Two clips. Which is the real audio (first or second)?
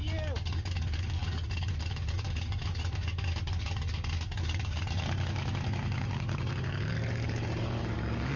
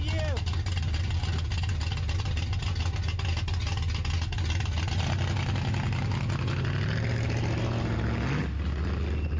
second